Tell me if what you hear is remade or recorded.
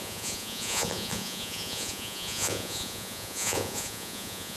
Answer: remade